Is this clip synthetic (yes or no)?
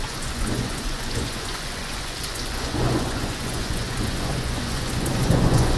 yes